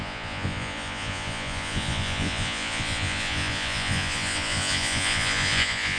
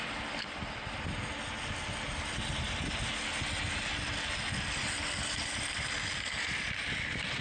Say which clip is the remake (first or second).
first